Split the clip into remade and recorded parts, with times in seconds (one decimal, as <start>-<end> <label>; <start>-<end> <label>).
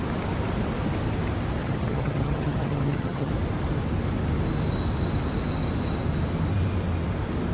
0.0-1.6 recorded; 1.6-3.3 remade; 3.3-7.5 recorded